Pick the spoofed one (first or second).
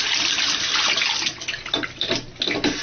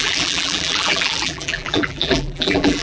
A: second